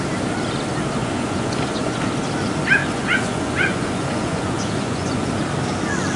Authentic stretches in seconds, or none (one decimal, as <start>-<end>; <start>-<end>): 0.0-1.0; 2.0-2.8; 5.3-6.2